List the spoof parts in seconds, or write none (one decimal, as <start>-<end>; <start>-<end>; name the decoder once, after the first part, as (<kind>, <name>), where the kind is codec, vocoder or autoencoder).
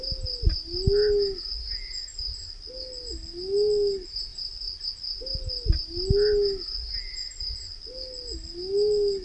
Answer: none